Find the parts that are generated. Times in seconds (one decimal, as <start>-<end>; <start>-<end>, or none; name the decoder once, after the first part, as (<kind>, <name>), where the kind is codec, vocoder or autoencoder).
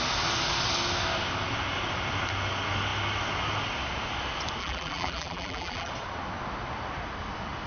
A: 4.6-5.9 (vocoder, BigVGAN v2)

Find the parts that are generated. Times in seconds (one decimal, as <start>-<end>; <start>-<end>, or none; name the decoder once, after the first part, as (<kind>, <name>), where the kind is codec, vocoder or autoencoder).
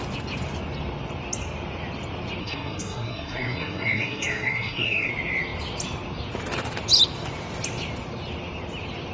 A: 2.4-5.1 (codec, SNAC)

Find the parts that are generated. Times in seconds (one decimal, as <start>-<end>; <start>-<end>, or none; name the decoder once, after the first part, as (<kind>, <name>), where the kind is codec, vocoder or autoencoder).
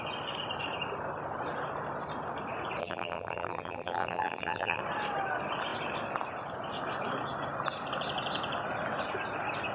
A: 2.8-4.8 (vocoder, BigVGAN v2)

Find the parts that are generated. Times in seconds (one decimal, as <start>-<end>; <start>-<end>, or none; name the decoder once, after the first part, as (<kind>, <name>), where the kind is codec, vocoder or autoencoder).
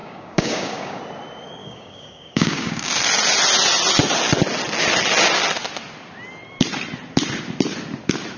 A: 0.0-1.0 (codec, DAC); 1.6-2.9